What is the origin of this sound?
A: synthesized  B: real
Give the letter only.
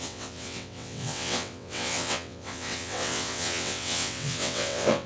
A